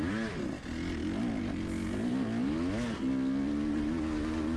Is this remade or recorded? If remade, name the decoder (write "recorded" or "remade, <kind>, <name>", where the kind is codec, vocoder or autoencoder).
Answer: recorded